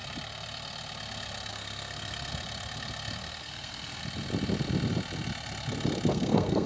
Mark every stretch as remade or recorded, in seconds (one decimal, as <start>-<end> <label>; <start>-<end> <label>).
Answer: 0.0-1.5 recorded; 1.5-2.3 remade; 2.3-3.4 recorded; 3.4-4.0 remade; 4.0-6.1 recorded; 6.1-6.7 remade